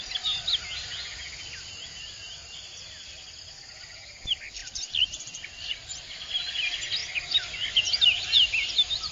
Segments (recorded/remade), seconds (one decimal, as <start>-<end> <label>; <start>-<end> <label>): 0.0-9.1 recorded